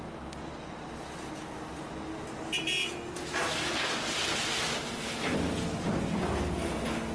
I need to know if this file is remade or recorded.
recorded